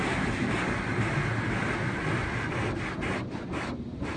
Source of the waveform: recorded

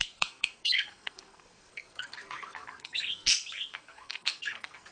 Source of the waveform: remade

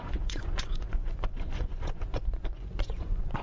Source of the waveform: remade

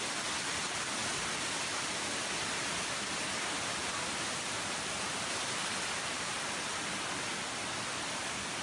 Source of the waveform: recorded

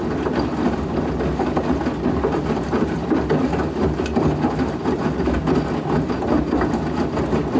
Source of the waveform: recorded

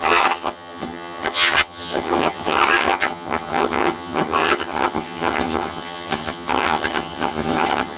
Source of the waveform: remade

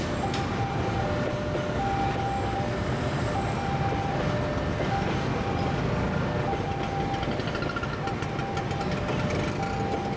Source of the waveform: recorded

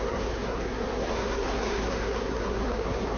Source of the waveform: remade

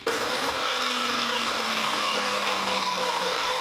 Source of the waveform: remade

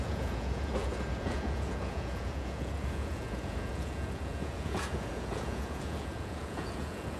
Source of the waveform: remade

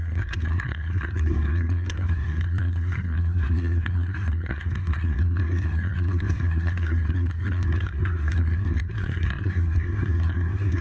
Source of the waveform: remade